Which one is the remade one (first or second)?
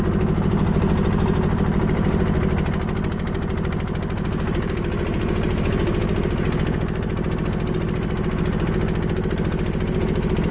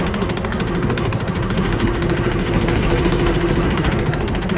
second